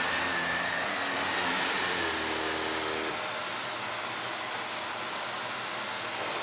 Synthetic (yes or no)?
no